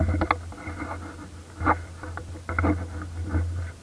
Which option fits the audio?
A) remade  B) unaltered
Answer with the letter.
B